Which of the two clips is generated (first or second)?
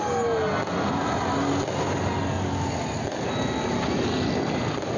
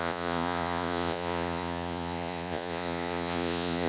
second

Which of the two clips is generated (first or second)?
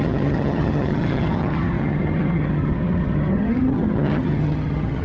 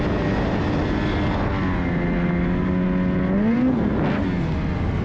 first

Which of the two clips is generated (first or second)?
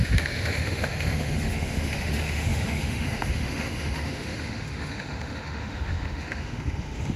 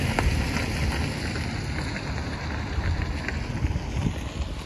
first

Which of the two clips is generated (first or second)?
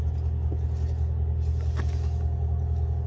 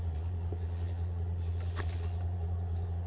second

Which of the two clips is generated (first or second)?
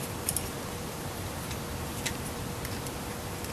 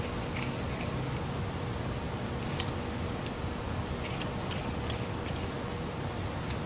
first